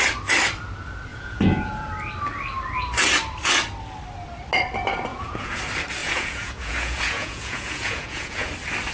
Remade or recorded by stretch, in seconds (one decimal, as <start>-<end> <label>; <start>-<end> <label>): 0.0-1.1 recorded; 1.1-1.9 remade; 1.9-5.1 recorded; 5.1-5.6 remade; 5.6-6.0 recorded; 6.0-8.5 remade; 8.5-8.9 recorded